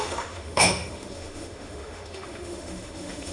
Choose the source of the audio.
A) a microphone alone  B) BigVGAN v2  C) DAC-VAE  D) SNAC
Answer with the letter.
C